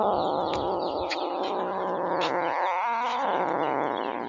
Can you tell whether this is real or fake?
real